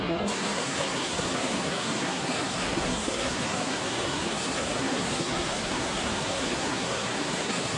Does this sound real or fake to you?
fake